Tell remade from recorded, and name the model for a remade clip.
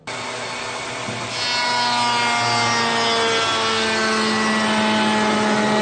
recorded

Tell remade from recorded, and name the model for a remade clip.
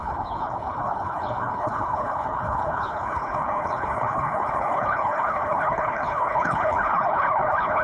remade, codec, HILCodec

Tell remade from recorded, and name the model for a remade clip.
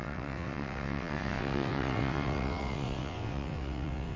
remade, vocoder, WaveNeXt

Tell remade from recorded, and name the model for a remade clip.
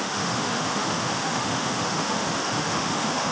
remade, autoencoder, DAC-VAE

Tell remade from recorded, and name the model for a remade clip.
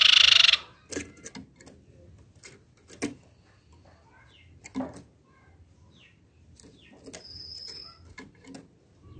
recorded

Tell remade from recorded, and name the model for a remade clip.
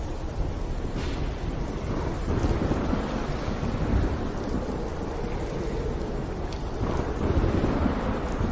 recorded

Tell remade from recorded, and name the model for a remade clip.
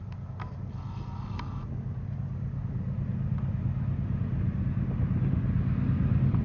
recorded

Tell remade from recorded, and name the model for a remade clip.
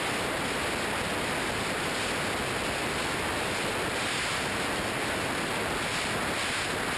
recorded